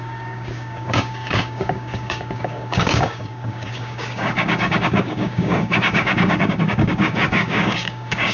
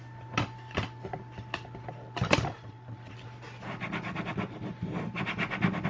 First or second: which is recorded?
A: second